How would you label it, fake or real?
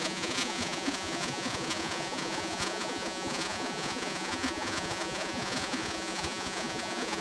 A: fake